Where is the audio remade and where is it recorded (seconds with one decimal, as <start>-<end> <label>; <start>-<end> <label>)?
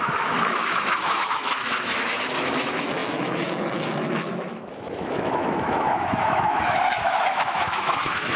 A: 0.0-8.4 remade